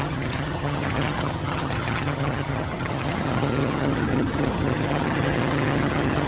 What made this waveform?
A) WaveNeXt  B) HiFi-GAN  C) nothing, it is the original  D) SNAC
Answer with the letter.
B